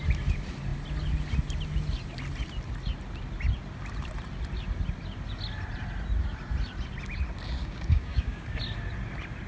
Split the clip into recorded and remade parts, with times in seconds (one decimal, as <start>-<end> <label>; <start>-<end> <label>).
0.0-7.6 recorded; 7.6-8.6 remade; 8.6-9.5 recorded